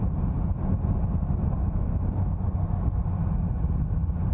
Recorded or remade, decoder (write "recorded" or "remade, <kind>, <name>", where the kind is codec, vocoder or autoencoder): recorded